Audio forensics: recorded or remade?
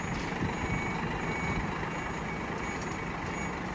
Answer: recorded